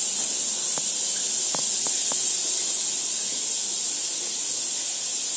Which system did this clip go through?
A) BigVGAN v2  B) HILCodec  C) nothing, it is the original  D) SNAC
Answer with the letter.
C